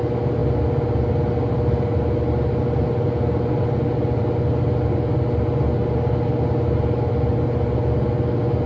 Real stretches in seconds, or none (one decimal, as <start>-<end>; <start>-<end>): 0.0-8.7